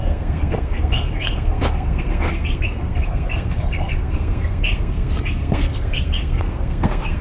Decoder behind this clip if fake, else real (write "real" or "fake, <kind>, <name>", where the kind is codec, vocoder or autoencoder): fake, codec, SNAC